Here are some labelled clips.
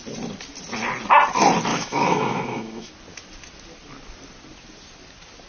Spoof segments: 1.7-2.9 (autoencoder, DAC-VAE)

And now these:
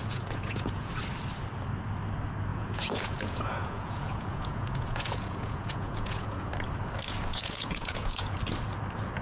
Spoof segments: 0.0-0.9 (vocoder, Vocos); 2.5-6.5; 7.3-8.4

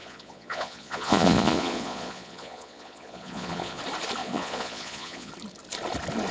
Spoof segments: 0.0-3.8 (vocoder, Vocos); 4.2-5.3

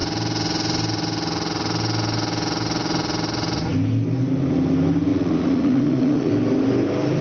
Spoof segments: 5.1-6.3 (vocoder, Vocos)

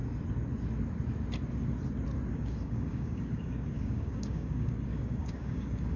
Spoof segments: 2.3-6.0 (codec, DAC)

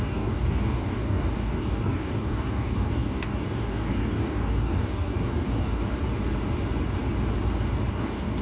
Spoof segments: 0.0-5.8 (codec, DAC); 7.9-8.4